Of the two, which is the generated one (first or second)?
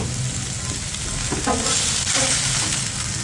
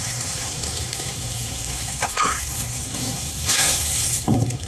second